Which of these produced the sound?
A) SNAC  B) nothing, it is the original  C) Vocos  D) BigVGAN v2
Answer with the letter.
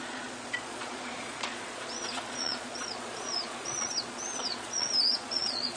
C